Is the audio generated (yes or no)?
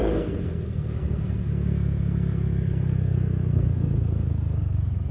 yes